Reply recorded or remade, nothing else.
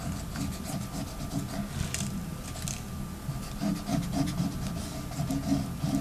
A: recorded